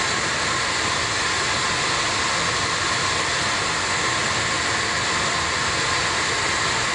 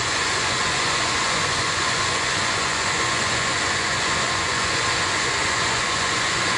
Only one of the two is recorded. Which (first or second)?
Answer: first